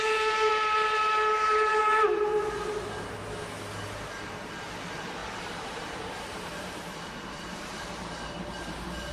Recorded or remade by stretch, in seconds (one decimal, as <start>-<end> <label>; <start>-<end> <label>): 0.0-0.5 recorded; 0.5-1.8 remade; 1.8-5.2 recorded; 5.2-9.1 remade